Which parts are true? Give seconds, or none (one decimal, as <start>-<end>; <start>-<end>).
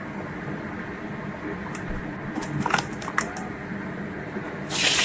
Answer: 2.0-5.0